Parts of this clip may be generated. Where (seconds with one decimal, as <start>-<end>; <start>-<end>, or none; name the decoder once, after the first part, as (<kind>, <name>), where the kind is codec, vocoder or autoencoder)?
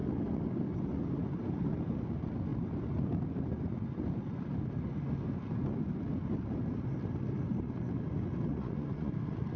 8.5-9.1 (vocoder, Vocos)